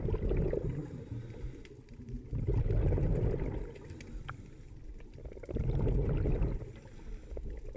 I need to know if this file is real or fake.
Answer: real